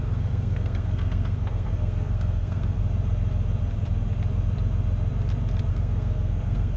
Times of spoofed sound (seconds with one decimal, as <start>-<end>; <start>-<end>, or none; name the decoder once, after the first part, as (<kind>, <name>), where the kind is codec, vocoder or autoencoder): 0.0-2.8 (codec, SNAC); 5.7-6.8